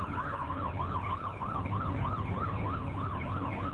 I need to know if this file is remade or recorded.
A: remade